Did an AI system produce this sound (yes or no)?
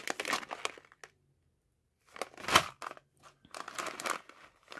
no